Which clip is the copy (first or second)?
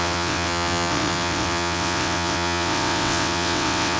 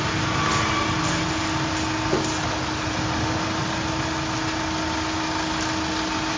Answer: first